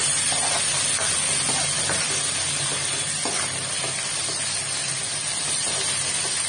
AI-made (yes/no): no